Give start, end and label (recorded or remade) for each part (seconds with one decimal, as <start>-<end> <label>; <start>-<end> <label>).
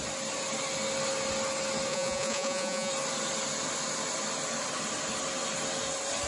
0.0-1.9 recorded; 1.9-2.9 remade; 2.9-6.3 recorded